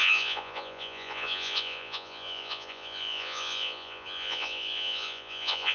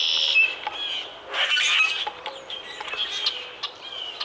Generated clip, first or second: first